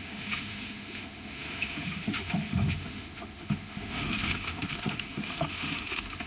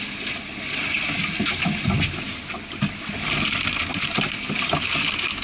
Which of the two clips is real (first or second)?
second